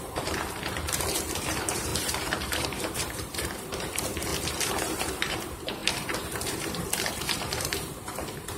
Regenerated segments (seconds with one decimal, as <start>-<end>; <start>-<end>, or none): 0.0-4.3; 4.8-8.6